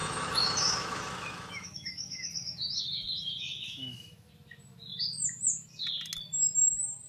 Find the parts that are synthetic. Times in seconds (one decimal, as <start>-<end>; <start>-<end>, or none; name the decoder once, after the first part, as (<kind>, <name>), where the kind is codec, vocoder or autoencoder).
0.0-4.3 (autoencoder, DAC-VAE)